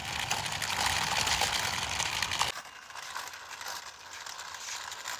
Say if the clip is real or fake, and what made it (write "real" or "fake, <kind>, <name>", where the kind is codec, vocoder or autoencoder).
real